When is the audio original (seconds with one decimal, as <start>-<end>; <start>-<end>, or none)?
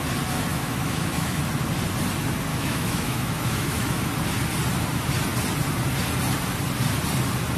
0.0-0.5; 1.4-2.5; 4.0-7.6